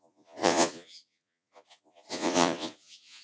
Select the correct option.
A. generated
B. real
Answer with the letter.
A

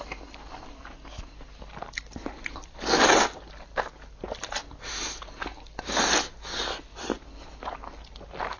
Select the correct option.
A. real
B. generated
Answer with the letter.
A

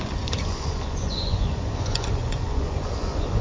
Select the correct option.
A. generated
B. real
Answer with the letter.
A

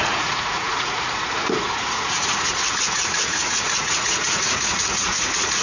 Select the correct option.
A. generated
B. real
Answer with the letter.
A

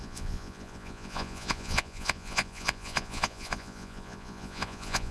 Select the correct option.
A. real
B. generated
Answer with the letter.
B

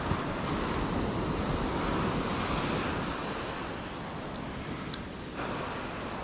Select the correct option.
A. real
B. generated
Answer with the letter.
A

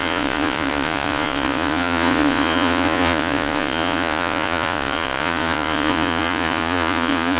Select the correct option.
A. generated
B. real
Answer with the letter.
A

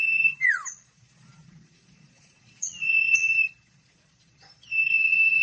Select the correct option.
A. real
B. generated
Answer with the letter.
B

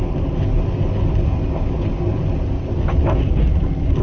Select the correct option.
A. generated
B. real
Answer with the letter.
B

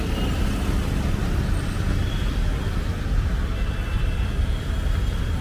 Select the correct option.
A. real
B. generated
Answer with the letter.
A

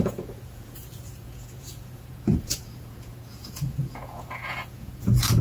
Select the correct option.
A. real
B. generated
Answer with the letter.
B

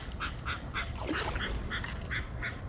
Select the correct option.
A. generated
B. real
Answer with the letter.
B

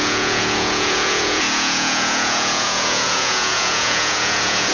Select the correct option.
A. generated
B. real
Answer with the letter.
A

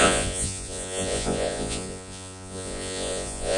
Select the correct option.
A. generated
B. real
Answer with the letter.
A